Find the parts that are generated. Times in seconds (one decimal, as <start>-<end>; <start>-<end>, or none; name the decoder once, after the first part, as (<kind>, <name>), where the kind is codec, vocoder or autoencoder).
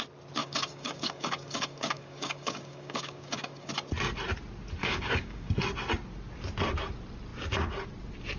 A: 0.4-3.7 (codec, DAC); 4.8-5.5